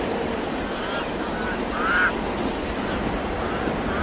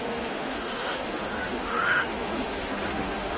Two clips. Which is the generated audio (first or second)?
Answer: second